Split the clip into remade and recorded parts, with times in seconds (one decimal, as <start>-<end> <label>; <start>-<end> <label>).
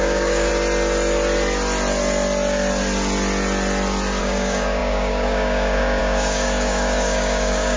0.0-0.5 remade; 0.5-4.2 recorded; 4.2-7.8 remade